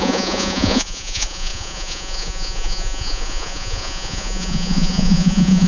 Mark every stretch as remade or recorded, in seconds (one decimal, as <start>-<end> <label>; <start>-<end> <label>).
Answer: 0.0-5.7 remade

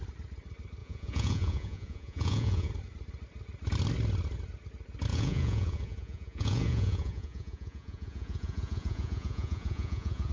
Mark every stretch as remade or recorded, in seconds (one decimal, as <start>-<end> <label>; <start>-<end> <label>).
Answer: 0.0-0.8 recorded; 0.8-2.7 remade; 2.7-5.1 recorded; 5.1-10.3 remade

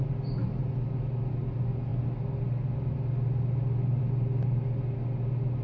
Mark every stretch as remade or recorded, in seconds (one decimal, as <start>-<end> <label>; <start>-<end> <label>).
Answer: 0.0-5.6 recorded

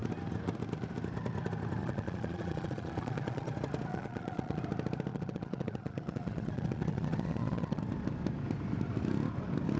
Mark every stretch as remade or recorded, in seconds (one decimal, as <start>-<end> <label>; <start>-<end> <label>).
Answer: 0.0-1.8 recorded; 1.8-3.5 remade; 3.5-3.9 recorded; 3.9-4.6 remade; 4.6-5.1 recorded; 5.1-7.8 remade; 7.8-9.8 recorded

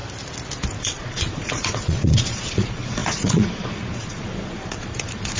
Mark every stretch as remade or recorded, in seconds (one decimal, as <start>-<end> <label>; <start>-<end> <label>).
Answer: 0.0-0.8 recorded; 0.8-5.4 remade

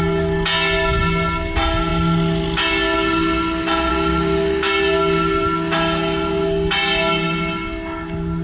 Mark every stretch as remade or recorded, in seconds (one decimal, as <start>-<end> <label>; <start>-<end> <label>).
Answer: 0.0-8.4 recorded

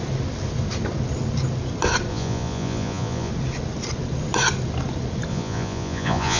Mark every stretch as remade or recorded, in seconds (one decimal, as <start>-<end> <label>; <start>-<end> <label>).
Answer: 0.0-2.1 recorded; 2.1-3.3 remade; 3.3-5.3 recorded; 5.3-6.4 remade